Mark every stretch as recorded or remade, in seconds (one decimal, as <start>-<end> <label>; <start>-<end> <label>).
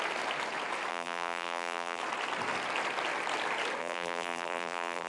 0.0-0.9 recorded; 0.9-2.0 remade; 2.0-3.8 recorded; 3.8-5.1 remade